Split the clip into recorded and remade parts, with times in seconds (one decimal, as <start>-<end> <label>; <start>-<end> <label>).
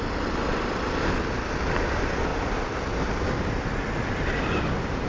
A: 0.0-5.1 recorded